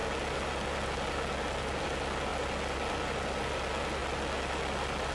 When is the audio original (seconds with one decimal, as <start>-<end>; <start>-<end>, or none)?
0.0-5.1